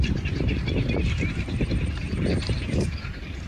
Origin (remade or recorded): remade